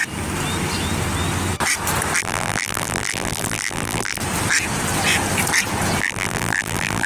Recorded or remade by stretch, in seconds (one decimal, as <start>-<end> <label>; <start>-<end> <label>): 0.0-2.2 recorded; 2.2-4.2 remade; 4.2-6.0 recorded; 6.0-7.1 remade